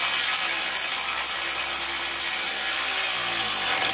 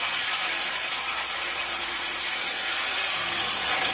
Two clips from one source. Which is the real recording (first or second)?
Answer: first